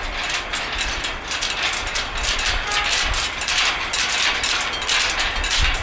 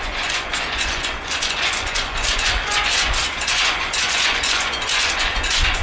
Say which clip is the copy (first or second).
second